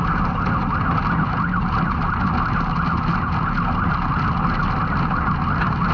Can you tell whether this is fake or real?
real